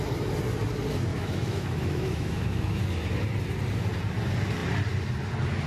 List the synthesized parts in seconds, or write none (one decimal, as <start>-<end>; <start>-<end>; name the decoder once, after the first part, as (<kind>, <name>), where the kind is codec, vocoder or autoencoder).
1.1-2.8 (autoencoder, DAC-VAE)